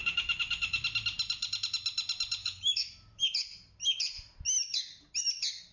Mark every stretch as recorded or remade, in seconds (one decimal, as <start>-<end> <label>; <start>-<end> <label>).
0.0-0.8 remade; 0.8-2.4 recorded; 2.4-3.2 remade; 3.2-5.7 recorded